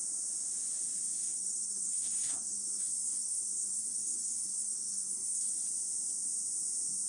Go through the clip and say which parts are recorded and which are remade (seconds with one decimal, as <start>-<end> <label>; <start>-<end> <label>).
0.0-1.2 recorded; 1.2-5.5 remade; 5.5-7.1 recorded